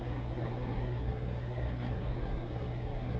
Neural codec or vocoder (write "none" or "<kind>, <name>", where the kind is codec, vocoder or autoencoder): codec, SNAC